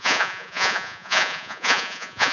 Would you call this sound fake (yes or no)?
yes